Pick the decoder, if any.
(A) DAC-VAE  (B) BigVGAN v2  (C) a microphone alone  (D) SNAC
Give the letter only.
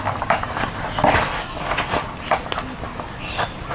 C